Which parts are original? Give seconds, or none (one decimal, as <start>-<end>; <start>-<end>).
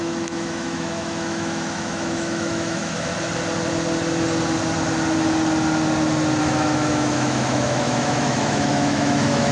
3.1-6.4